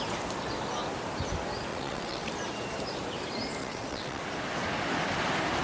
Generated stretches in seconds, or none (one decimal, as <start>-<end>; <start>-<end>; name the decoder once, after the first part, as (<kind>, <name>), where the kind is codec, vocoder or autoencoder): 1.7-2.3 (vocoder, WaveNeXt); 3.6-4.2